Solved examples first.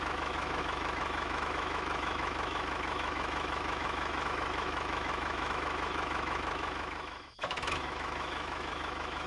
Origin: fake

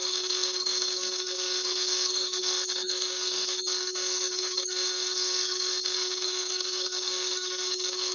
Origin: fake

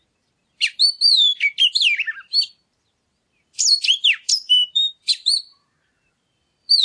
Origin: fake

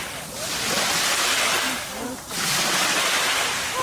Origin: real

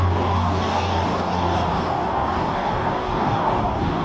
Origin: fake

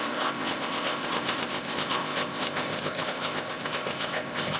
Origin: fake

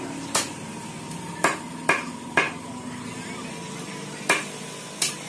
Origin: real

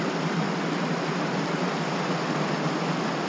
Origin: real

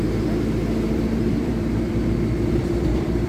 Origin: fake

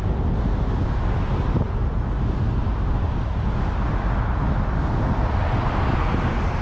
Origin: real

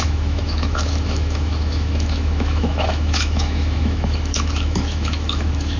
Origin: fake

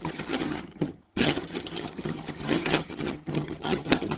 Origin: fake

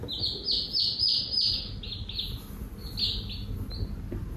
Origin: real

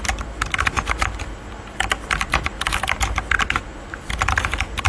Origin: real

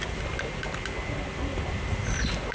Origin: fake